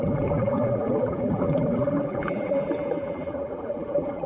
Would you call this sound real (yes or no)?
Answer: no